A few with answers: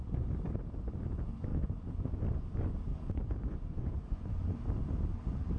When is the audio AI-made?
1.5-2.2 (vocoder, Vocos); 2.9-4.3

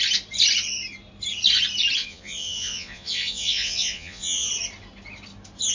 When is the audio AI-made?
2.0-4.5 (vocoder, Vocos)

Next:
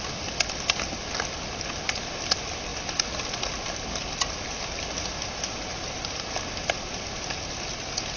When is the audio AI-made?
none

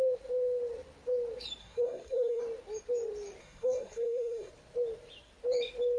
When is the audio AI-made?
1.6-2.4 (codec, SNAC); 3.4-4.5